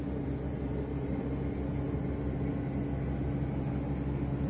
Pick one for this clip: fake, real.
real